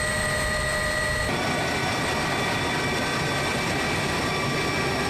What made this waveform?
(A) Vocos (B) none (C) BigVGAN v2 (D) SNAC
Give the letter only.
B